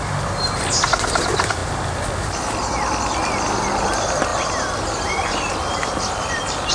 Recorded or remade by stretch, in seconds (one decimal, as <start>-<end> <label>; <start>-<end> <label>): 0.0-1.6 remade; 1.6-2.2 recorded; 2.2-6.7 remade